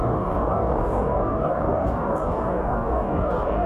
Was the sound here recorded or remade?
remade